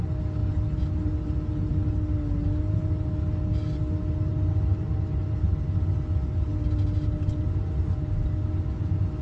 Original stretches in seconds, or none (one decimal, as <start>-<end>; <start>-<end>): 0.0-9.2